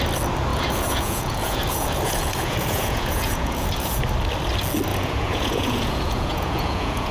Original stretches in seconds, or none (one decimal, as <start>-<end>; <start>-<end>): 0.0-0.5; 4.0-4.9